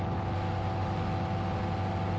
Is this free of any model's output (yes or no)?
yes